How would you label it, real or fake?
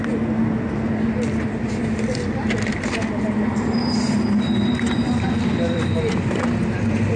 real